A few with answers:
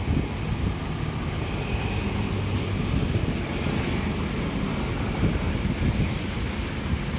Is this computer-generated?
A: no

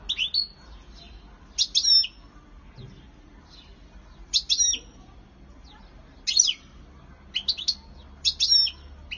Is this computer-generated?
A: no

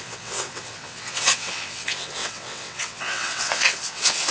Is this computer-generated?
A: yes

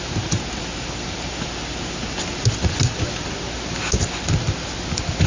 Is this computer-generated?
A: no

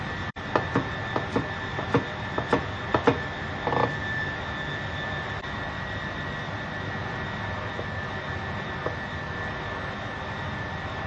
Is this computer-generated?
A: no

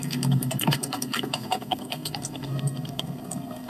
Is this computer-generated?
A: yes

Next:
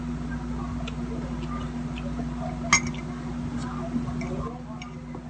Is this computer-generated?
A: no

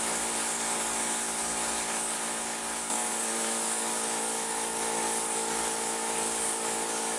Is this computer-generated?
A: yes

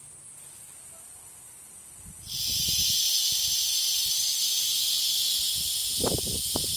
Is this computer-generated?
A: no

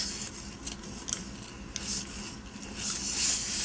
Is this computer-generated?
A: no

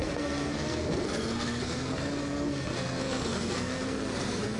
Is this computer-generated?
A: yes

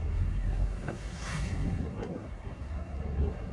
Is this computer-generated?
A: yes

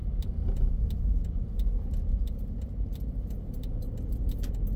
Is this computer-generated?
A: no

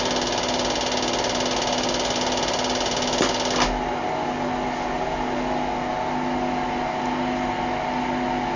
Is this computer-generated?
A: no